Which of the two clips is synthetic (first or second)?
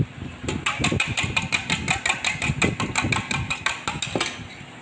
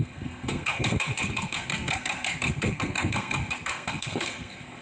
second